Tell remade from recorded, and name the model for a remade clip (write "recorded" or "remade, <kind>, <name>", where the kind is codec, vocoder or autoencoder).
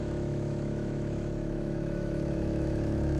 remade, autoencoder, DAC-VAE